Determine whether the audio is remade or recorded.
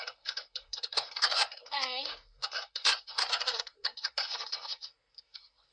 remade